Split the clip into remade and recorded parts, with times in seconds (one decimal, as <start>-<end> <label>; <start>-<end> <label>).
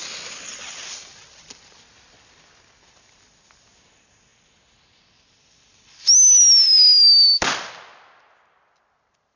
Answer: 0.0-9.4 recorded